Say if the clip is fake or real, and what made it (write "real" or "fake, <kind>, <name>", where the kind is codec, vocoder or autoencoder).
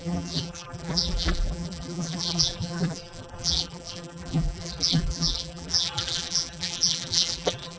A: fake, vocoder, BigVGAN v2